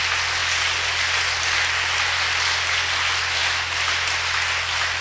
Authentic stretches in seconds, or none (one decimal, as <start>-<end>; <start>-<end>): 0.0-5.0